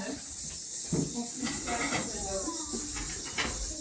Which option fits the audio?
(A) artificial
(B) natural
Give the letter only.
B